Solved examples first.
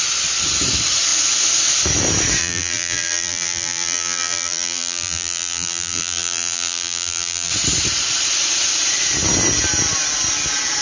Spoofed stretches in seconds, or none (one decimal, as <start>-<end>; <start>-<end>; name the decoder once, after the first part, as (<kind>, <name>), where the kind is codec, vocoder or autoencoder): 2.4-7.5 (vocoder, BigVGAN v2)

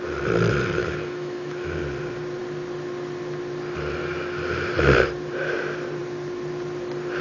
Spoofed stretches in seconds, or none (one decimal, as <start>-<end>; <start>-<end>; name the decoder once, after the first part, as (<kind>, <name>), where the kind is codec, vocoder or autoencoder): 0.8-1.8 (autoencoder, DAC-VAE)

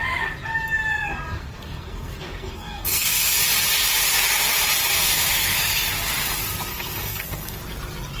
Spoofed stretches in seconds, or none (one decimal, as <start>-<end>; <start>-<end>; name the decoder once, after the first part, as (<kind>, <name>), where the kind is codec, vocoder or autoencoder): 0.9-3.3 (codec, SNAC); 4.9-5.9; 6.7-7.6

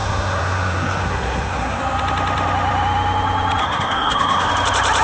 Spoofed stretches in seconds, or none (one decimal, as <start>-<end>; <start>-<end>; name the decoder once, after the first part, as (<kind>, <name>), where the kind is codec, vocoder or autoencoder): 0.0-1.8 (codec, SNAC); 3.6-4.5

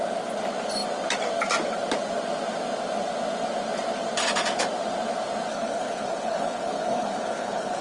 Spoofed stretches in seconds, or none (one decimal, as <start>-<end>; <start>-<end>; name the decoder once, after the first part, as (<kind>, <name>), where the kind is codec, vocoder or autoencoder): 5.5-7.8 (codec, HILCodec)